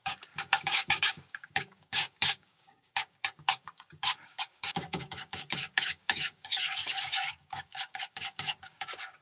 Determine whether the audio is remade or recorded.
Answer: remade